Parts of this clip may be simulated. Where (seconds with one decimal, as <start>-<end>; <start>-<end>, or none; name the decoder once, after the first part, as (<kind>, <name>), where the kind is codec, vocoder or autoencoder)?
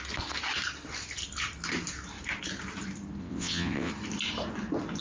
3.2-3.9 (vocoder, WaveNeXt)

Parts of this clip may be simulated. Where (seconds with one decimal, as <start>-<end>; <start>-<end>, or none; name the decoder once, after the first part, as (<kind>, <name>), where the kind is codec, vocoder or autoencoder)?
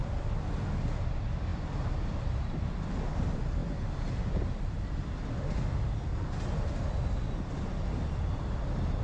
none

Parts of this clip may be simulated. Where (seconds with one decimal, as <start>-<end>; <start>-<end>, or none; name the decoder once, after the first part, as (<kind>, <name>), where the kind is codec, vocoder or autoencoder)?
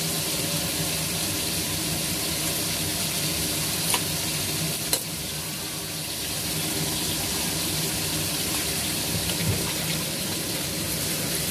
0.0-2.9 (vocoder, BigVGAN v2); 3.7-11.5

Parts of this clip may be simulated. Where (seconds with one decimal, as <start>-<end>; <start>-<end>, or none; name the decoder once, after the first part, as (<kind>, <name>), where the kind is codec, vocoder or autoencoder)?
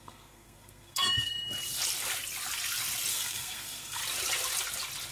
0.0-1.3 (codec, SNAC); 3.1-4.0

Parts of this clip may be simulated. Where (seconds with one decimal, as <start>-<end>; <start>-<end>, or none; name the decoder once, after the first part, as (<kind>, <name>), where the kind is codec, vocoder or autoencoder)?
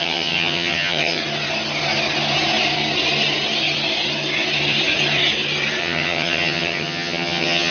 0.0-1.2 (vocoder, HiFi-GAN); 5.8-7.7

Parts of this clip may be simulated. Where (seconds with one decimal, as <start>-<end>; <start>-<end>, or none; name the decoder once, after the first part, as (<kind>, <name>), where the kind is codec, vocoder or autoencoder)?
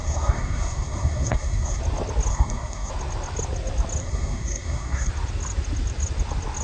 0.0-1.8 (codec, SNAC); 2.3-2.9; 4.0-5.1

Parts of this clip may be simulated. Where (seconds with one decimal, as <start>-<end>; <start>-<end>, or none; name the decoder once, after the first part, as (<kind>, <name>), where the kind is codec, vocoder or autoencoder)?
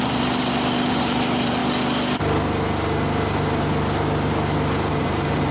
0.0-1.6 (vocoder, BigVGAN v2); 4.9-5.5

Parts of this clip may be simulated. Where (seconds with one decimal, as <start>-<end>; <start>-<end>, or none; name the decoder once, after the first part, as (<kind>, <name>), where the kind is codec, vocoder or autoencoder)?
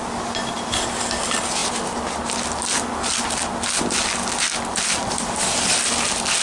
none